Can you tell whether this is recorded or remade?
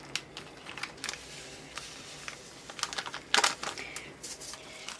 recorded